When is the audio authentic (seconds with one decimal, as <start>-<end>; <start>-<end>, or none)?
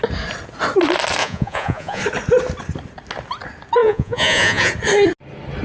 0.0-1.2; 2.0-3.8; 4.7-5.6